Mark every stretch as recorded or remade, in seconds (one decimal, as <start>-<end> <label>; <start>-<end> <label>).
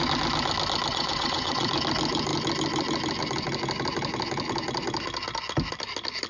0.0-0.9 recorded; 0.9-1.7 remade; 1.7-6.3 recorded